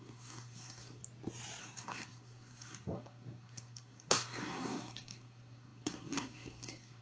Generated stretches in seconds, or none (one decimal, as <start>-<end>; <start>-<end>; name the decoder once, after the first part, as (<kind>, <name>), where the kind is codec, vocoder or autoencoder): 0.0-1.0 (codec, SNAC); 1.6-7.0